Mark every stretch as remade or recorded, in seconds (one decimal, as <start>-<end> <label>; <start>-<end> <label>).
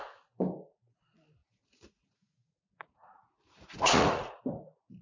0.0-1.4 recorded; 1.4-4.4 remade; 4.4-5.0 recorded